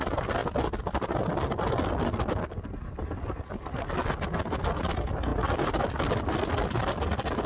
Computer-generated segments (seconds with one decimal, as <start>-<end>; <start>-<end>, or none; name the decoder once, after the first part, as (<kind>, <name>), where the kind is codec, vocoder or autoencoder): none